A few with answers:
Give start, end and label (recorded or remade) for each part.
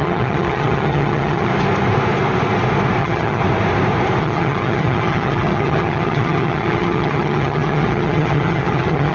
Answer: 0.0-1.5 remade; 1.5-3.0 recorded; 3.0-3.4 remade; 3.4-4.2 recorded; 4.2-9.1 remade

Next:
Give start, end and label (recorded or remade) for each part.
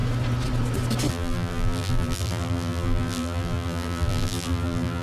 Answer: 0.0-1.1 recorded; 1.1-5.0 remade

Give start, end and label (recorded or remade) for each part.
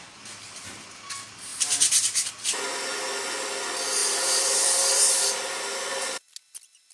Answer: 0.0-1.5 recorded; 1.5-2.3 remade; 2.3-4.0 recorded; 4.0-5.0 remade; 5.0-6.9 recorded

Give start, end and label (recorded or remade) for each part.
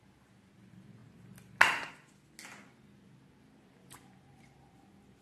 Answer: 0.0-5.2 recorded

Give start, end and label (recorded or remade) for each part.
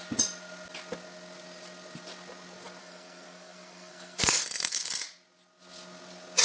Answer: 0.0-2.8 recorded; 2.8-4.9 remade; 4.9-6.4 recorded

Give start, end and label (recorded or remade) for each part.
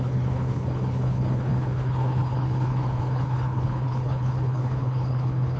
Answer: 0.0-5.6 remade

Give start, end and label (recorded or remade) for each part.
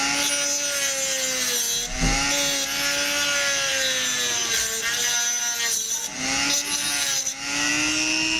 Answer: 0.0-8.4 recorded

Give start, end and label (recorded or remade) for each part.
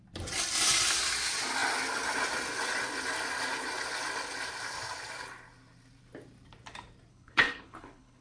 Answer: 0.0-7.1 recorded; 7.1-8.2 remade